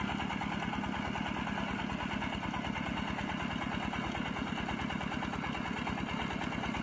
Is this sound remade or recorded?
recorded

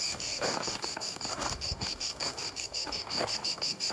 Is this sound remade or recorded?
remade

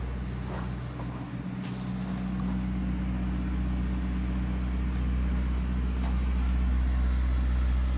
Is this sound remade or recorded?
recorded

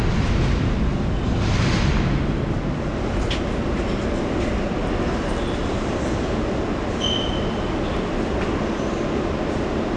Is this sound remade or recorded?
recorded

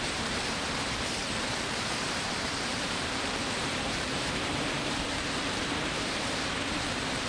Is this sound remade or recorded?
remade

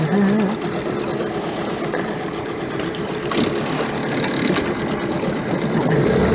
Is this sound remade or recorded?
recorded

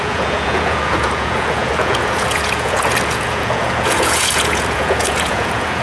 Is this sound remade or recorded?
remade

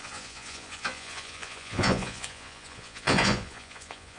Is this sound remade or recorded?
remade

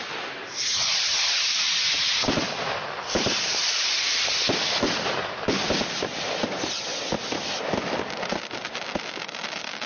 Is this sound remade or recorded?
recorded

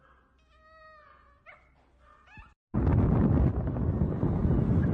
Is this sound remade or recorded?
recorded